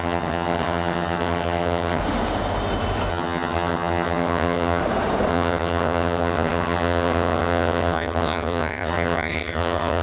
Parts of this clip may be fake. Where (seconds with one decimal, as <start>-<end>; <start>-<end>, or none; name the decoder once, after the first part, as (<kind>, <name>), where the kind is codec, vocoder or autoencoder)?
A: 0.0-2.0 (vocoder, HiFi-GAN); 3.1-4.8; 5.3-10.0